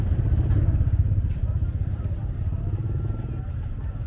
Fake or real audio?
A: fake